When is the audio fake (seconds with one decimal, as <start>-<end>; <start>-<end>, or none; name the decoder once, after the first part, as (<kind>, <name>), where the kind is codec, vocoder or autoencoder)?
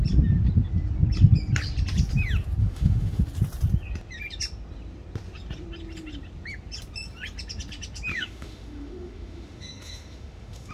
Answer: 2.6-3.2 (autoencoder, DAC-VAE); 8.1-10.7